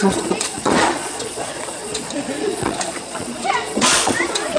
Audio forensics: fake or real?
fake